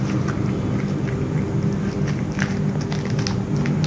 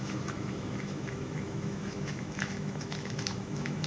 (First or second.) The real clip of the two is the first